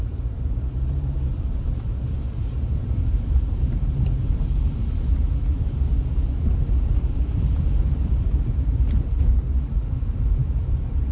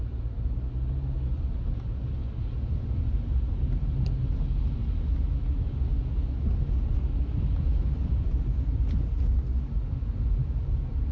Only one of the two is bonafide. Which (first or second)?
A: second